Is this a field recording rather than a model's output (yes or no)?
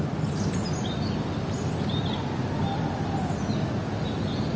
yes